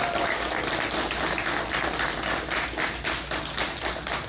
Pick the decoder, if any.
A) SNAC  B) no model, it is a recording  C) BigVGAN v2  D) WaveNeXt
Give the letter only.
B